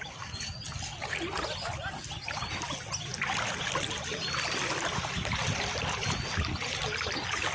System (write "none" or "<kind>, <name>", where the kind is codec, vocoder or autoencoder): none